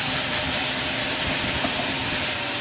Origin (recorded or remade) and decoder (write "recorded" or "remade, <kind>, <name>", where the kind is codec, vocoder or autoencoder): recorded